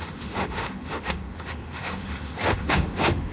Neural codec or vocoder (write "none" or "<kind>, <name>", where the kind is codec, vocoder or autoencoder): autoencoder, DAC-VAE